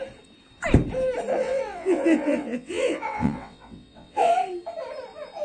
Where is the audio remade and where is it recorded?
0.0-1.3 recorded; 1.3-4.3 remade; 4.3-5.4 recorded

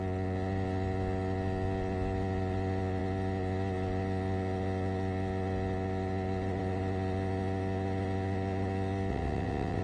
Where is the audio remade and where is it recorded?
0.0-9.1 recorded; 9.1-9.8 remade

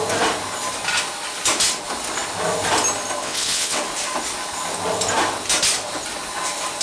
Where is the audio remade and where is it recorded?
0.0-3.2 recorded; 3.2-3.8 remade; 3.8-6.8 recorded